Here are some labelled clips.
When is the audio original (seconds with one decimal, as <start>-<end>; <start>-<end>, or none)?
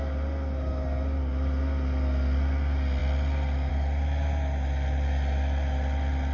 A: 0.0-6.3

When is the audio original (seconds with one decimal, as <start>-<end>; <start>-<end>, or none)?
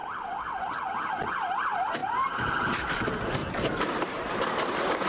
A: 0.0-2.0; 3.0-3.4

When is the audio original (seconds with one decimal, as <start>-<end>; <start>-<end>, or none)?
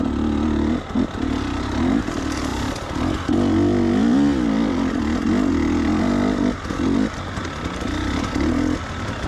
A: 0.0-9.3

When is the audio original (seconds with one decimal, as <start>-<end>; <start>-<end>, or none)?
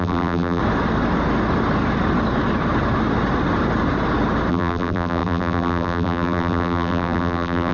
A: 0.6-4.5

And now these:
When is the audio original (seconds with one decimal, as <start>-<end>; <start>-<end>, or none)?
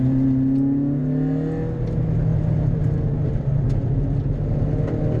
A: 0.0-2.3; 3.3-5.2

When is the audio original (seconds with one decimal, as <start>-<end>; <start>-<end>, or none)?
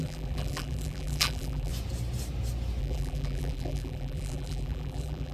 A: 1.7-2.8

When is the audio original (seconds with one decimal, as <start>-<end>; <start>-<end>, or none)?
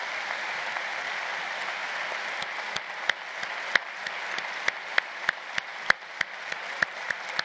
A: 1.8-5.3